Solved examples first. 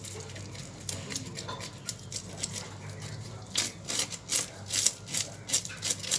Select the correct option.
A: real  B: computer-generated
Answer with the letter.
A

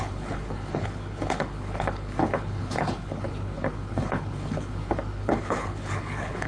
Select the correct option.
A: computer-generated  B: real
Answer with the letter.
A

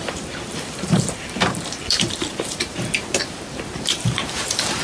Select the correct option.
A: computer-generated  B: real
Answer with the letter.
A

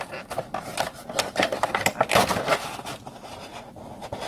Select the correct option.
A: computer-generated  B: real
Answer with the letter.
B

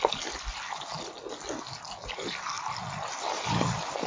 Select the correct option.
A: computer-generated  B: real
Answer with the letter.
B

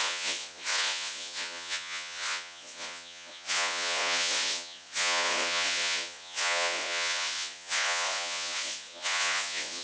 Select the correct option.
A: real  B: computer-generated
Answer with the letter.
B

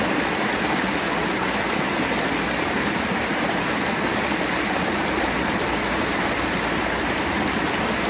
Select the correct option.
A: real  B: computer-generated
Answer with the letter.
A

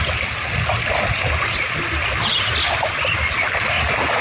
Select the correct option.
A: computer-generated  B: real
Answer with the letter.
B